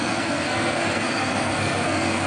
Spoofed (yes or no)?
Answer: yes